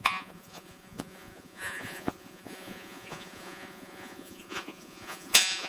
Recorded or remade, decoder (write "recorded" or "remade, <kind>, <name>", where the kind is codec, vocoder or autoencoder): remade, vocoder, Vocos